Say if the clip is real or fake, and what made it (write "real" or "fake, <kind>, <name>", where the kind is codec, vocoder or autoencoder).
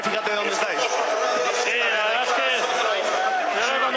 real